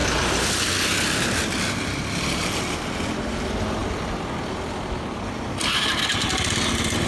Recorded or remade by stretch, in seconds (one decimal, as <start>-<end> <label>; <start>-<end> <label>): 0.0-7.1 recorded